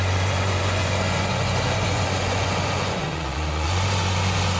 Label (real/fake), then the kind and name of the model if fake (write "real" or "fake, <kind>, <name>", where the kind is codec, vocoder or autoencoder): fake, vocoder, Vocos